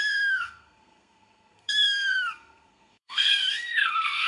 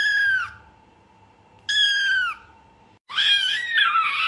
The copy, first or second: first